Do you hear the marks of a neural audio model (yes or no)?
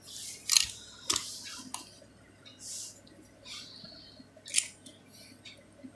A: no